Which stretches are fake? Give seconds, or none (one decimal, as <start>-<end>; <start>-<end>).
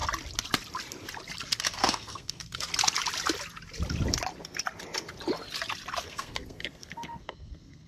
1.6-2.7; 6.0-7.9